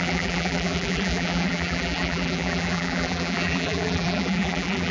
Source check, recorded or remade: remade